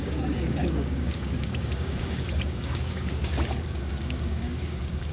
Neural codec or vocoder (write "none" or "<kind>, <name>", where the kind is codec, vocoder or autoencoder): codec, DAC